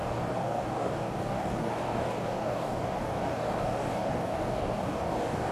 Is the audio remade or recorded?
remade